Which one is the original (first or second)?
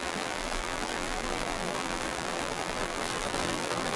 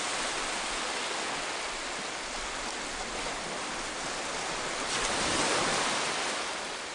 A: second